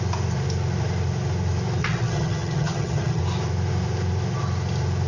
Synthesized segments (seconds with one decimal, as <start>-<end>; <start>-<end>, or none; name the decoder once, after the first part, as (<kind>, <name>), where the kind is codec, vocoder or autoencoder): 1.8-3.2 (vocoder, HiFi-GAN)